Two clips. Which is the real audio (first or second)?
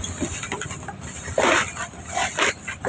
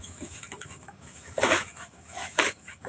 first